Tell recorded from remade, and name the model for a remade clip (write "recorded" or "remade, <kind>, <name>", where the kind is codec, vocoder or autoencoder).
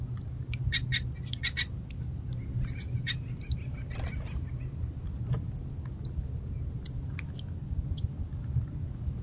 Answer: recorded